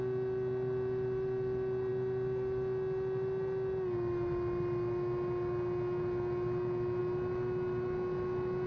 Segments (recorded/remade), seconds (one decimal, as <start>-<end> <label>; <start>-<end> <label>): 0.0-8.7 recorded